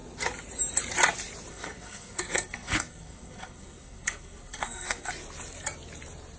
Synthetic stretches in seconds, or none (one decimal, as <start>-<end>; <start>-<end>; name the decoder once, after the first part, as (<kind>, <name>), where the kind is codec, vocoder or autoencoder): 1.5-5.1 (codec, SNAC)